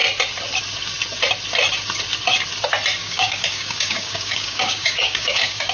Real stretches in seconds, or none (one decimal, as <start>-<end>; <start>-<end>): 0.0-3.0